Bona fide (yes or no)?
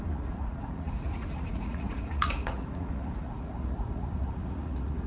no